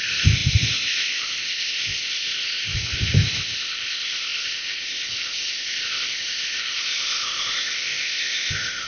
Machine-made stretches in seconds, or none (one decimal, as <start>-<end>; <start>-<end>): 0.0-8.9